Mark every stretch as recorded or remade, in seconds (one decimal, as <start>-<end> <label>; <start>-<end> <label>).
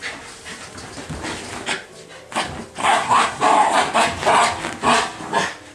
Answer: 0.0-2.8 recorded; 2.8-3.4 remade; 3.4-5.7 recorded